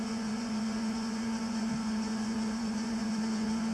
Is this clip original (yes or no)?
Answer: no